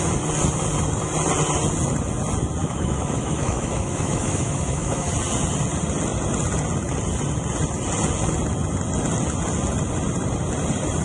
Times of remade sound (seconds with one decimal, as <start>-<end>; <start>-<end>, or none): 2.6-5.1